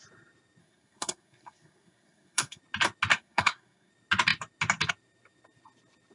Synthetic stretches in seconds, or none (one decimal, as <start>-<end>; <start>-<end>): 0.6-2.6; 3.1-3.9